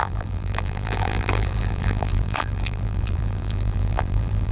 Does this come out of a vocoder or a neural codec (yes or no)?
yes